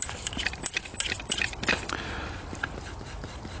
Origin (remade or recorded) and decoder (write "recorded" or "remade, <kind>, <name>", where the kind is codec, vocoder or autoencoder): recorded